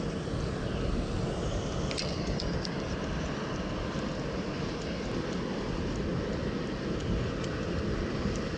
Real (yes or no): yes